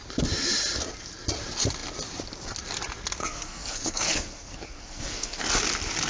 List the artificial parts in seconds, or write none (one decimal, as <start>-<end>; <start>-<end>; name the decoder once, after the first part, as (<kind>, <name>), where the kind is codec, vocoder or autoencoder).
3.2-5.4 (codec, SNAC)